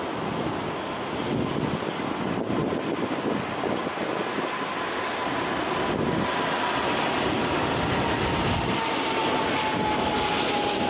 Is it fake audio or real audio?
real